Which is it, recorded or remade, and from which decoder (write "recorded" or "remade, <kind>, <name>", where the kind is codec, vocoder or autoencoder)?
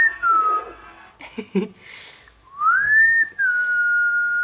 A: recorded